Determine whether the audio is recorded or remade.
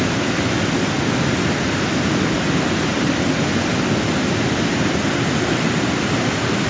recorded